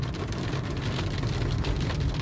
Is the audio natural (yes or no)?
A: yes